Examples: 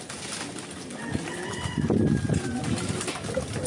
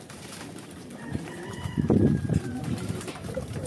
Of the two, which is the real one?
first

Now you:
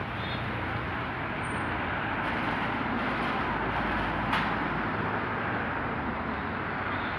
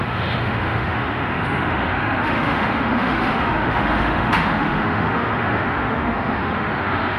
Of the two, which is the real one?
first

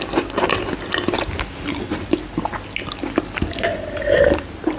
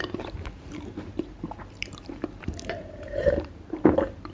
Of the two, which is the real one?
first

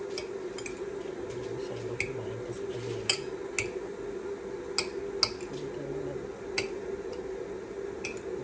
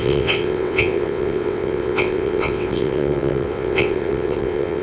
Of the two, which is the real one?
first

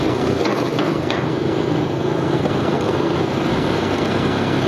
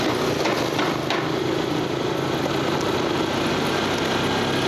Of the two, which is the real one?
second